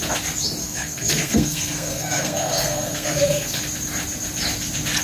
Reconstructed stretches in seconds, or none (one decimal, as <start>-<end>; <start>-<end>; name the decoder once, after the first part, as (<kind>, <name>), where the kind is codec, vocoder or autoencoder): 0.6-3.6 (codec, SNAC)